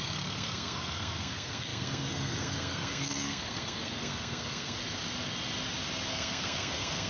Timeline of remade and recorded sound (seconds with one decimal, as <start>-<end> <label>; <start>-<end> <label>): 0.0-4.8 remade; 4.8-6.1 recorded; 6.1-7.1 remade